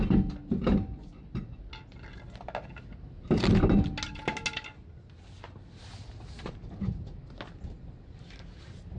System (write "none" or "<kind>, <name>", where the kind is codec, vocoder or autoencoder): none